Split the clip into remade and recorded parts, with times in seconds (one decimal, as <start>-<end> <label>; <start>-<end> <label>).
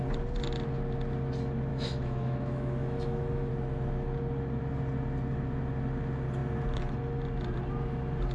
0.0-1.7 recorded; 1.7-3.5 remade; 3.5-8.3 recorded